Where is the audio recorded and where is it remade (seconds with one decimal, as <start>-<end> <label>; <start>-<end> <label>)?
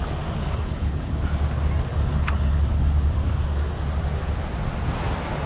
0.0-0.4 recorded; 0.4-1.1 remade; 1.1-1.9 recorded; 1.9-2.6 remade; 2.6-5.5 recorded